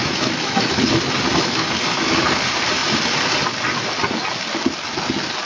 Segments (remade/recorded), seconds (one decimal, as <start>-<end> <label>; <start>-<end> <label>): 0.0-0.7 remade; 0.7-1.3 recorded; 1.3-2.2 remade; 2.2-5.4 recorded